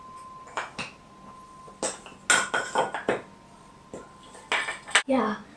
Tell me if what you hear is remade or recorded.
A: recorded